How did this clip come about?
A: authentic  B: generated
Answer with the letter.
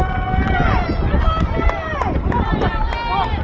A